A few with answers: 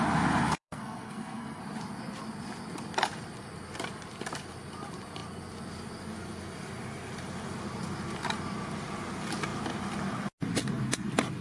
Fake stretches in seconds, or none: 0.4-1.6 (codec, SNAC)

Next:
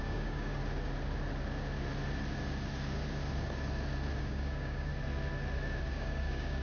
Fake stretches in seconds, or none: 0.0-0.6 (codec, DAC); 4.2-4.9; 5.9-6.6

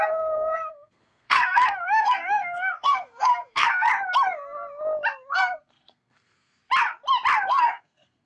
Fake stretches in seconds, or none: 0.0-3.9 (codec, SNAC); 5.3-6.6; 7.5-8.3